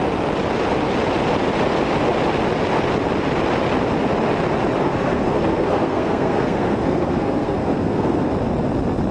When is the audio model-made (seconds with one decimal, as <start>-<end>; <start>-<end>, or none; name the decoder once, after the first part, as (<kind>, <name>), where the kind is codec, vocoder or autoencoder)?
4.8-8.3 (codec, SNAC)